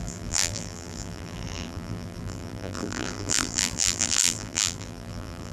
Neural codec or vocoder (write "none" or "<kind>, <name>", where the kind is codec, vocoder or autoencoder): vocoder, BigVGAN v2